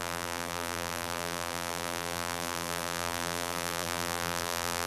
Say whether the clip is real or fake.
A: fake